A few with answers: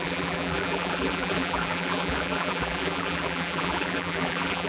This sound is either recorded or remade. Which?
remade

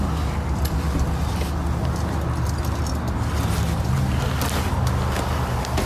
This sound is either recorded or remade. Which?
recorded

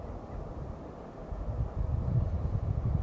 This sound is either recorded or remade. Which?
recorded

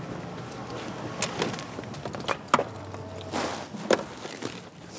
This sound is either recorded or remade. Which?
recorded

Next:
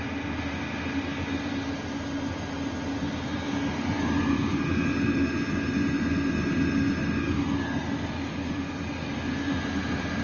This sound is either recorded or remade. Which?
recorded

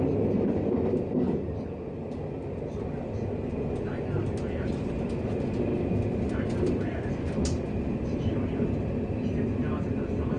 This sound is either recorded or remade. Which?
recorded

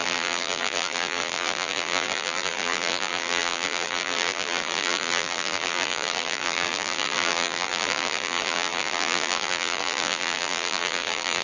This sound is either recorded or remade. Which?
remade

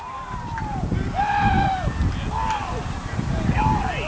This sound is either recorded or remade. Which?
recorded